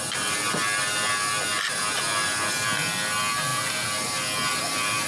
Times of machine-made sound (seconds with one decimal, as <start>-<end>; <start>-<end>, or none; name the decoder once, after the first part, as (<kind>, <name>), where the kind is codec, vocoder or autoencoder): none